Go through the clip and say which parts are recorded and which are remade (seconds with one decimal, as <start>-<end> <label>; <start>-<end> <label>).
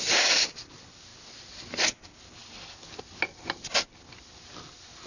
0.0-1.1 remade; 1.1-4.2 recorded; 4.2-5.1 remade